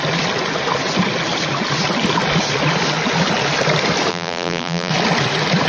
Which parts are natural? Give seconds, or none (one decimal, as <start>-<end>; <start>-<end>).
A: 0.0-4.1; 4.9-5.7